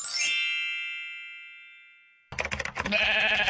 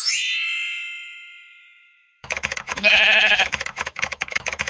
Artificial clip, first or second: second